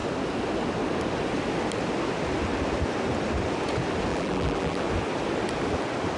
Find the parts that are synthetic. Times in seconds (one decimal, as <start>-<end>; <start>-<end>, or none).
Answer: 4.1-4.8